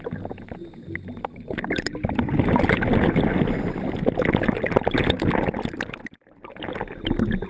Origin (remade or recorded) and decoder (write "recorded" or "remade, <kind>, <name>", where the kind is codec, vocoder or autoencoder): recorded